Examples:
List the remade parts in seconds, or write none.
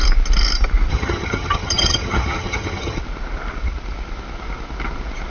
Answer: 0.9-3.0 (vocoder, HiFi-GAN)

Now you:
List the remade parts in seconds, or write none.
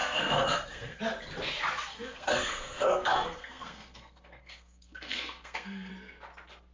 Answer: 0.0-1.0 (codec, SNAC); 1.9-5.9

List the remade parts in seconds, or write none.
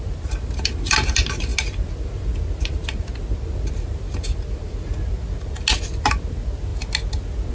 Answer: none